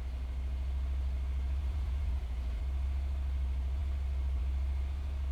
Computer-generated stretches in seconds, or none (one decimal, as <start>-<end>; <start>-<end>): 1.6-2.6